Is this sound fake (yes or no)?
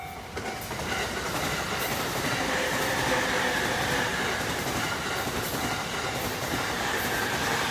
no